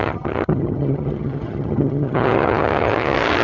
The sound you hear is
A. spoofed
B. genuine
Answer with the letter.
A